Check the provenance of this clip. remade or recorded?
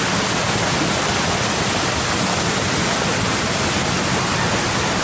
recorded